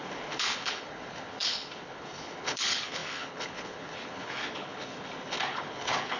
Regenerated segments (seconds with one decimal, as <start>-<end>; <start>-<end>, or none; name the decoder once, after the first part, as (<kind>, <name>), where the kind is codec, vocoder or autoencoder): 0.0-6.2 (codec, HILCodec)